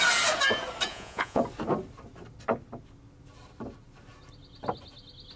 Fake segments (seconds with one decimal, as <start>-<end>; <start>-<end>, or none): 0.9-1.4